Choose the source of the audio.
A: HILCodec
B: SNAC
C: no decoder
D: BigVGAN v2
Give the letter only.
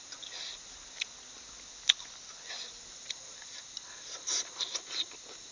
C